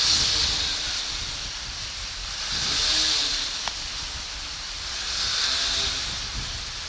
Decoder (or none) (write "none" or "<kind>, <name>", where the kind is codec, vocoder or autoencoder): none